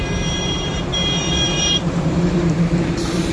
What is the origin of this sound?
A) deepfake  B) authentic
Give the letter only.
A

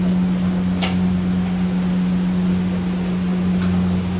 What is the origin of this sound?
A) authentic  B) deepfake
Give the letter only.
A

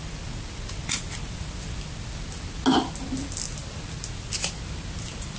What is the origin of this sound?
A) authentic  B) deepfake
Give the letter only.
A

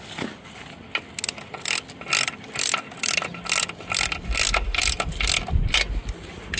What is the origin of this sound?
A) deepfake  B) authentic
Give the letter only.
B